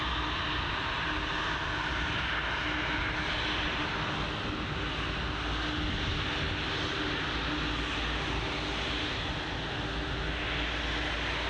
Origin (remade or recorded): recorded